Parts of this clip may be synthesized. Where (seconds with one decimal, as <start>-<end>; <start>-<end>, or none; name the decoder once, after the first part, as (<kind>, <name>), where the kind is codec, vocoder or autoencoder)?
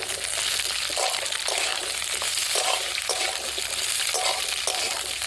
1.7-3.5 (vocoder, BigVGAN v2)